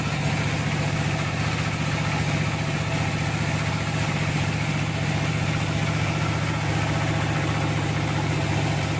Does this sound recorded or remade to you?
recorded